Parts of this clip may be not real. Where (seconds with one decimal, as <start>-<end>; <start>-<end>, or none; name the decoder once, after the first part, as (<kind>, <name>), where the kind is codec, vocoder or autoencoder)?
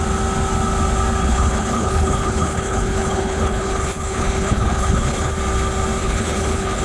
1.2-5.3 (codec, HILCodec); 6.0-6.8